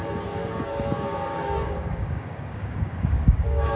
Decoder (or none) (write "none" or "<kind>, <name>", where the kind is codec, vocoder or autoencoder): codec, DAC